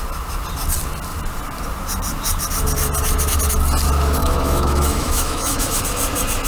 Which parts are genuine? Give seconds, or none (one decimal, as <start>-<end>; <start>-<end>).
0.0-4.2; 5.8-6.5